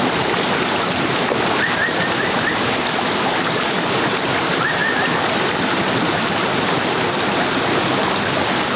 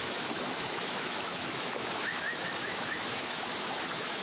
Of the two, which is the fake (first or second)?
second